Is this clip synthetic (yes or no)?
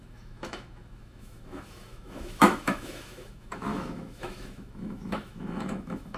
yes